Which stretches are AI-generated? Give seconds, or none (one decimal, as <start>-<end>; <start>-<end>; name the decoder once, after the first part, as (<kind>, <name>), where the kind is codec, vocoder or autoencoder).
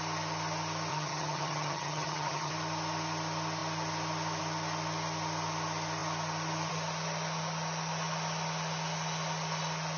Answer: 0.9-2.5 (vocoder, HiFi-GAN)